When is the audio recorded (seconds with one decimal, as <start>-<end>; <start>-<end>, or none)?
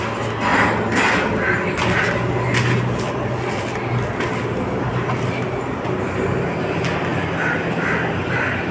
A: 0.0-8.7